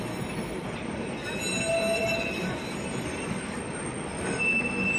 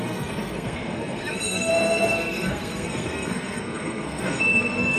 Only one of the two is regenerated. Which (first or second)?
second